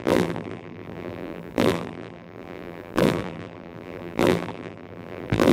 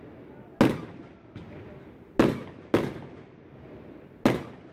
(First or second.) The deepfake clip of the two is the first